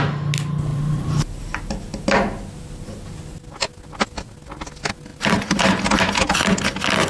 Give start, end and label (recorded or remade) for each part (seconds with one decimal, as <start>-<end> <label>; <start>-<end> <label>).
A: 0.0-0.7 recorded; 0.7-1.6 remade; 1.6-5.1 recorded; 5.1-6.1 remade; 6.1-7.1 recorded